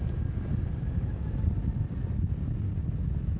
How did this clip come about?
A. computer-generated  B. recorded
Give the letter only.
B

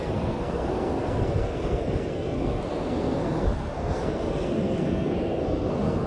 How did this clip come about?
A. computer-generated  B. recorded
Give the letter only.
A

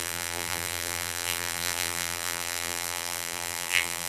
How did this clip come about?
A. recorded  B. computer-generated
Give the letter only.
B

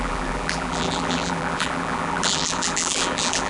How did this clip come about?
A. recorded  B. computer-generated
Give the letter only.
B